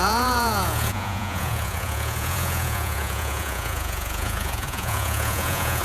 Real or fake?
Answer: fake